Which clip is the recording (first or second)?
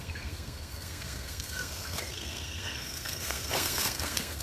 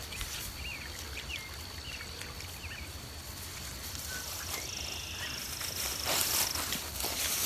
second